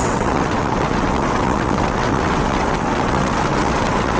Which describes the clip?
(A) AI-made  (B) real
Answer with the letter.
A